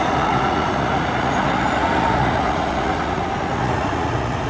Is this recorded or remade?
remade